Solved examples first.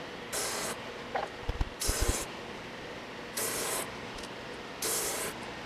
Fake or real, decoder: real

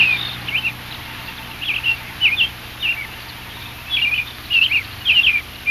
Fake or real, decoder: real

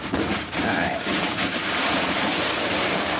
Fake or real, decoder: fake, vocoder, BigVGAN v2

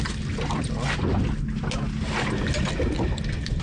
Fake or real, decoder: real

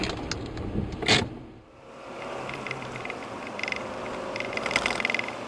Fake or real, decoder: real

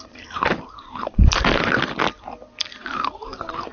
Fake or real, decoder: real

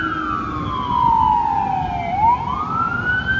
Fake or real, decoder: real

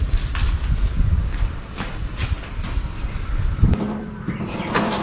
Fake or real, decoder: fake, vocoder, BigVGAN v2